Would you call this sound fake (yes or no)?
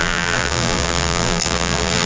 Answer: yes